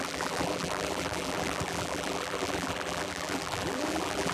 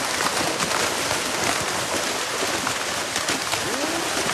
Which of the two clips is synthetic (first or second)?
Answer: first